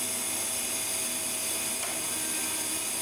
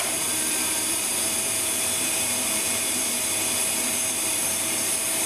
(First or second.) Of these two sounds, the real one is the first